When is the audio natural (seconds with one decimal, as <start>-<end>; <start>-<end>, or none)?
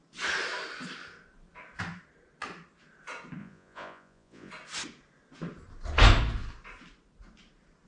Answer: 0.0-3.4; 4.5-7.9